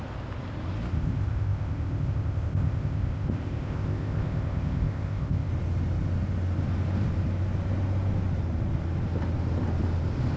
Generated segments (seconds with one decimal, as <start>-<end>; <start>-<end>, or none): 0.9-5.5